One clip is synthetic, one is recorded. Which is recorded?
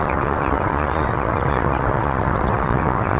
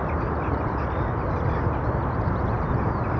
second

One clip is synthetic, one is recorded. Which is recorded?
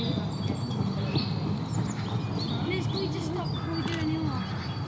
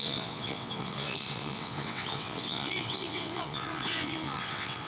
first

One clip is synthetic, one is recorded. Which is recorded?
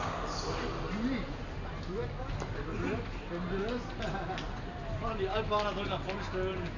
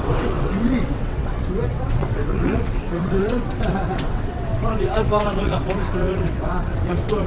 first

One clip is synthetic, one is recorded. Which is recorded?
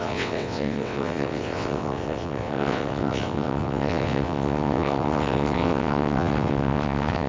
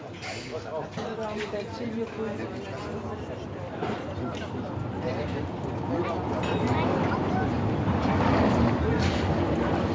second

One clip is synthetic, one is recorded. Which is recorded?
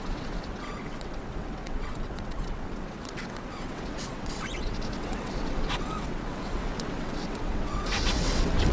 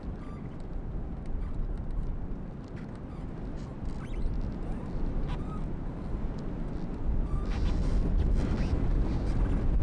second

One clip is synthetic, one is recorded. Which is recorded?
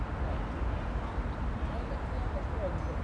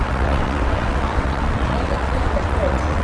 first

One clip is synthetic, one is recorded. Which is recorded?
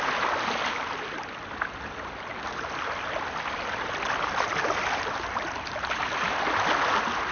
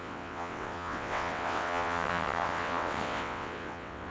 first